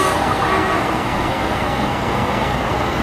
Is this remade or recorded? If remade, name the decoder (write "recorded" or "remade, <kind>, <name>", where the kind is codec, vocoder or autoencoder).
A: remade, codec, SNAC